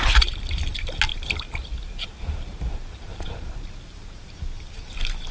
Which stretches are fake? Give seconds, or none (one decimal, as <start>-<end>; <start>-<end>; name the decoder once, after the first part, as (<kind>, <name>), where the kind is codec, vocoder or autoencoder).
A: 1.1-4.3 (vocoder, BigVGAN v2)

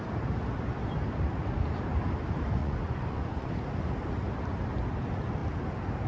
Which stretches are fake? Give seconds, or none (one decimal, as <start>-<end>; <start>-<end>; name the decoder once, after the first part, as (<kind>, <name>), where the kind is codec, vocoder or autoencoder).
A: 2.6-3.5 (vocoder, Vocos)

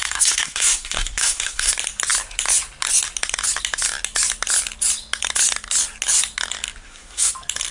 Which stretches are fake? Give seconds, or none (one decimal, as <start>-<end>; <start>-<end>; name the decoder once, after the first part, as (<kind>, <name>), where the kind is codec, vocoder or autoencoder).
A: 0.0-1.7 (codec, SNAC); 6.8-7.3

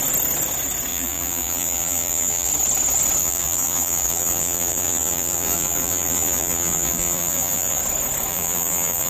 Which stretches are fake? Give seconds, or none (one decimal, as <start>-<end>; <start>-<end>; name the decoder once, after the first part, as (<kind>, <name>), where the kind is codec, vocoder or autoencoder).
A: 0.9-2.5 (vocoder, BigVGAN v2); 3.2-7.8; 8.3-9.1